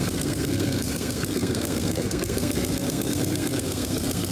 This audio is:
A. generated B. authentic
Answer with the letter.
A